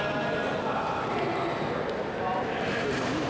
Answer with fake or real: real